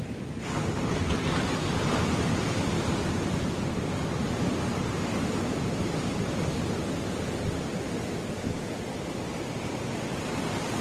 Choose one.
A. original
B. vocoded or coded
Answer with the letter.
B